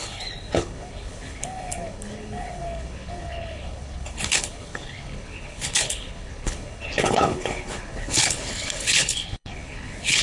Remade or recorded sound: remade